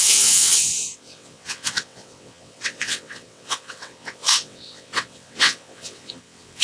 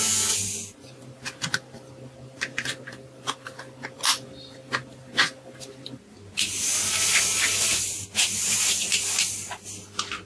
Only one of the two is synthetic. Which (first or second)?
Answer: first